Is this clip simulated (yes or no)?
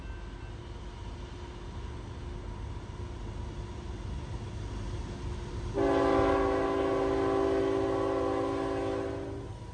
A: no